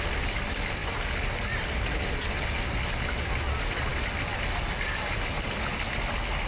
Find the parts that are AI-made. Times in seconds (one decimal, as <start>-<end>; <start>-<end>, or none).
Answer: none